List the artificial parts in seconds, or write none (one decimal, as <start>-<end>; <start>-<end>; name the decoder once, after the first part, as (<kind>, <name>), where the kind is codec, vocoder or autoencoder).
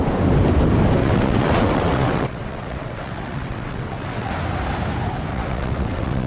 1.0-4.3 (vocoder, WaveNeXt); 5.3-6.3